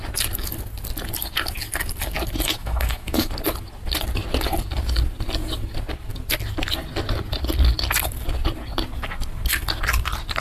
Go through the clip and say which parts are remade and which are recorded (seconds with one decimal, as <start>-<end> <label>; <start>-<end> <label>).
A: 0.0-2.6 recorded; 2.6-3.3 remade; 3.3-10.4 recorded